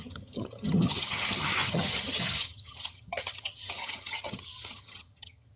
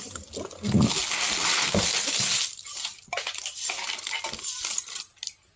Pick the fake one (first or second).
first